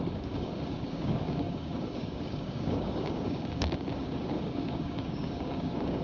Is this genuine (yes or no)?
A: no